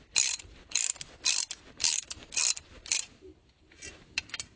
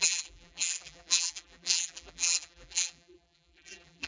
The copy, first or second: second